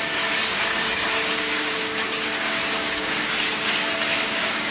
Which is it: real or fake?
fake